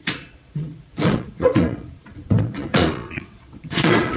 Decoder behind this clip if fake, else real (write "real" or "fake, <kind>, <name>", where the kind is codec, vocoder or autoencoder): fake, vocoder, Vocos